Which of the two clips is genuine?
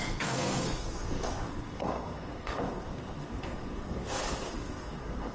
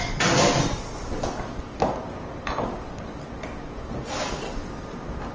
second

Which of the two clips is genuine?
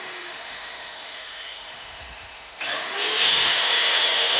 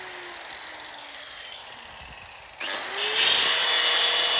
second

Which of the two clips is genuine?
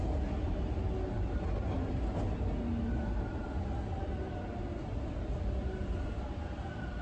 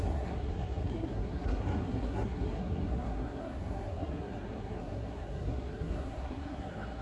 first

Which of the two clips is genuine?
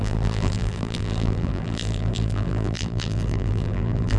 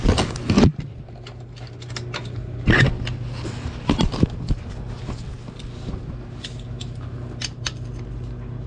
second